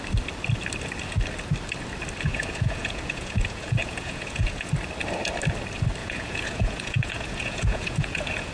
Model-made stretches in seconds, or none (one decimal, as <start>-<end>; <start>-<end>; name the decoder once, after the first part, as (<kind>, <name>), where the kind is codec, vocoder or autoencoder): 2.3-4.7 (vocoder, Vocos); 6.0-8.5